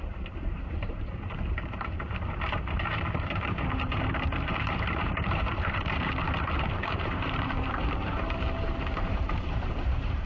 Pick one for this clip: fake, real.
fake